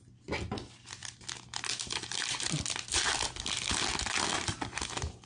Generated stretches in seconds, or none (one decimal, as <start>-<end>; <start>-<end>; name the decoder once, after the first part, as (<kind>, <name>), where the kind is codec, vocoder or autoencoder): none